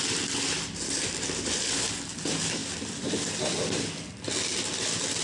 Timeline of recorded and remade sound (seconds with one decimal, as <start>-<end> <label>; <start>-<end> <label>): 0.0-5.2 recorded